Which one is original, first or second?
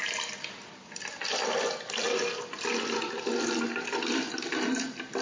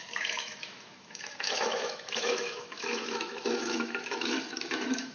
first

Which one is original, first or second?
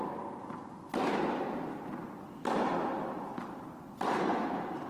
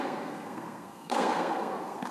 first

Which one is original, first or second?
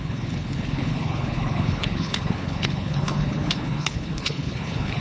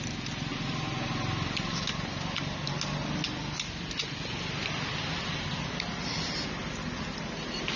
second